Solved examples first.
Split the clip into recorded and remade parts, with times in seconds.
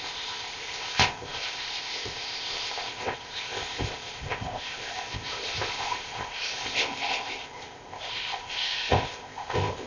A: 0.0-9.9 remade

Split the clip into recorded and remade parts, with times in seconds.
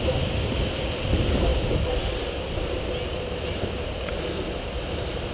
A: 0.0-5.3 recorded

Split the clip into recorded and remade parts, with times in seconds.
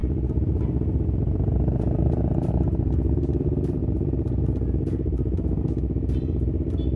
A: 0.0-2.5 remade; 2.5-7.0 recorded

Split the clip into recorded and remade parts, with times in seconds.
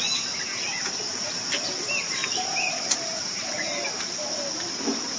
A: 0.0-2.2 recorded; 2.2-4.2 remade; 4.2-5.2 recorded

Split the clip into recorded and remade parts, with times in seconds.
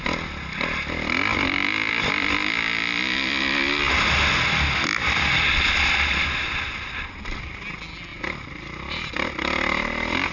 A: 0.0-1.3 recorded; 1.3-1.9 remade; 1.9-8.1 recorded; 8.1-10.3 remade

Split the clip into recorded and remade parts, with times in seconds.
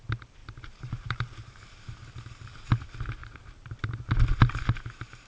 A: 0.0-0.4 recorded; 0.4-2.7 remade; 2.7-3.2 recorded; 3.2-4.0 remade; 4.0-5.3 recorded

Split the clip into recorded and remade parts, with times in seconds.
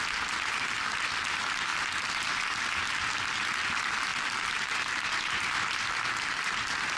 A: 0.0-4.1 recorded; 4.1-5.7 remade; 5.7-7.0 recorded